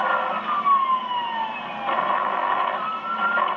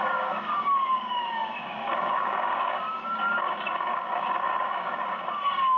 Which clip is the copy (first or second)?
second